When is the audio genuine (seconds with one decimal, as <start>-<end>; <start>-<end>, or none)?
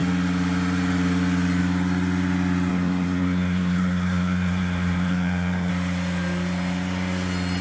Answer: 0.0-2.7; 5.7-7.6